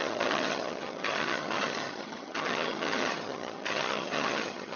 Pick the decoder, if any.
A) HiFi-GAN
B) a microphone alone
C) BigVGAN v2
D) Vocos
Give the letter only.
A